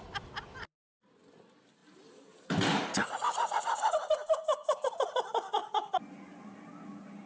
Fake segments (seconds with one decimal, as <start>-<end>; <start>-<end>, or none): none